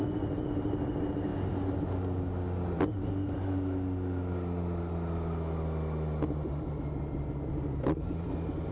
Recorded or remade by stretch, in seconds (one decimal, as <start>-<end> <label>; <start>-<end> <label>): 0.0-8.7 recorded